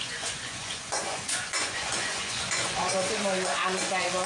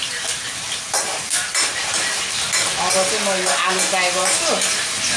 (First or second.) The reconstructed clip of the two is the first